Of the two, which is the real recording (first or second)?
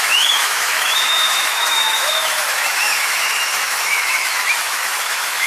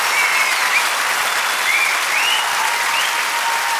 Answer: second